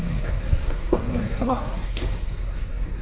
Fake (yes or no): yes